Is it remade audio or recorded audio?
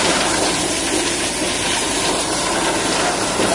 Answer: remade